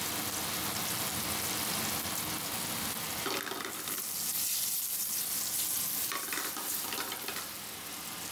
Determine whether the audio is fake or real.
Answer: real